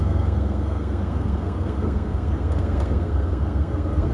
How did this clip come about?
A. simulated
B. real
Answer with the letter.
A